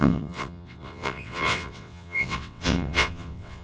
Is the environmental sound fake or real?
fake